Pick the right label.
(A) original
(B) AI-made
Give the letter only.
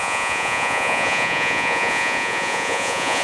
B